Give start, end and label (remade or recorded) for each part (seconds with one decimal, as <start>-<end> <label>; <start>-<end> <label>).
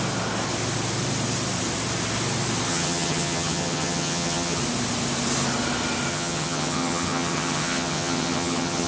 0.0-2.7 recorded; 2.7-4.6 remade; 4.6-6.1 recorded; 6.1-8.9 remade